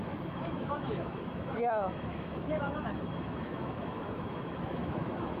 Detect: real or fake fake